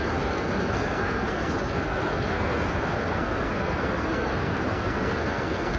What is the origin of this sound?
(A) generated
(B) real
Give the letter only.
A